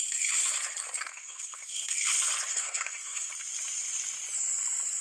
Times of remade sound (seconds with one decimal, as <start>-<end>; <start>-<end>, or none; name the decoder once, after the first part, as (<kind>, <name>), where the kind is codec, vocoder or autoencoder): 1.1-1.7 (codec, SNAC); 2.5-3.3